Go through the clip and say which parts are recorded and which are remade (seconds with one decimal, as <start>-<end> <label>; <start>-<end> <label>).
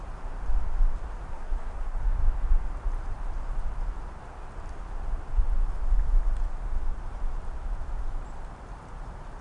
0.0-1.3 recorded; 1.3-2.0 remade; 2.0-9.4 recorded